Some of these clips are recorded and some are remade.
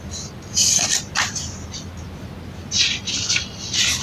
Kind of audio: recorded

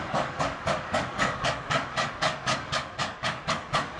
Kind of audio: remade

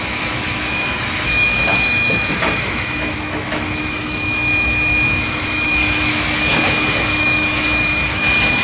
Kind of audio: remade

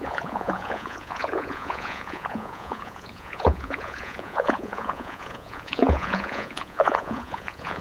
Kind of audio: remade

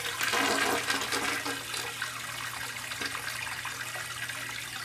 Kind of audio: recorded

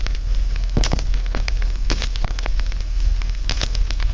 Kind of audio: remade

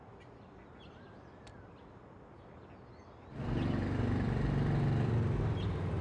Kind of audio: recorded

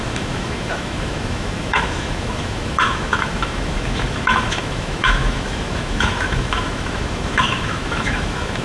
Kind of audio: remade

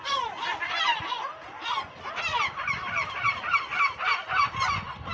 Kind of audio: recorded